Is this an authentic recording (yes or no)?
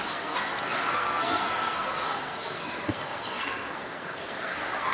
no